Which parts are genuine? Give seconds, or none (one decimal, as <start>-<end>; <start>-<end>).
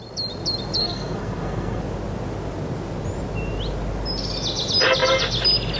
0.0-0.8; 1.8-5.8